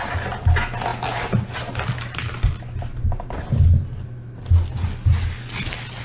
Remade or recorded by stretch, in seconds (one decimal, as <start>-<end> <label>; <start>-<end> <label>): 0.0-6.0 recorded